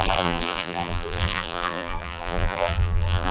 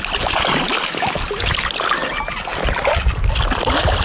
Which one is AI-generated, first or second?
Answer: first